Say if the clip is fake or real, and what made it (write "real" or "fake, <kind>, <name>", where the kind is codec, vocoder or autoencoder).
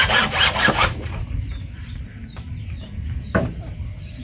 fake, vocoder, BigVGAN v2